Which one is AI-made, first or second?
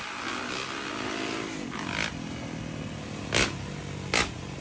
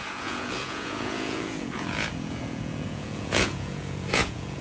second